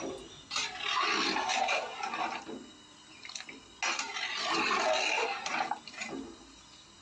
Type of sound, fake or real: real